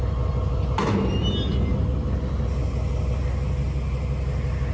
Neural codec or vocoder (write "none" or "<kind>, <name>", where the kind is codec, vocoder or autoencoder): none